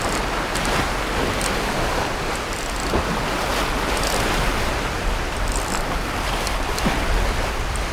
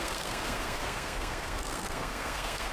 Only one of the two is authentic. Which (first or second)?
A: first